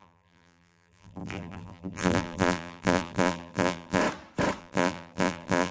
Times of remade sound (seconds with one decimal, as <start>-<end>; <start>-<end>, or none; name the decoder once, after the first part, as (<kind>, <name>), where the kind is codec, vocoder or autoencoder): 0.0-4.0 (vocoder, BigVGAN v2); 4.6-5.7